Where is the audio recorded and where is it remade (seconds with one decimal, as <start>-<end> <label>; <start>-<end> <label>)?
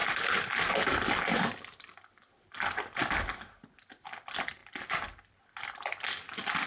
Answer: 0.0-6.7 recorded